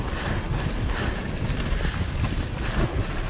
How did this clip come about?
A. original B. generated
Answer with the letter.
A